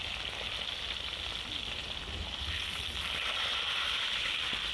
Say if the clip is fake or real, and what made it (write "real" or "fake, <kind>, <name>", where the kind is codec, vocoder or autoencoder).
real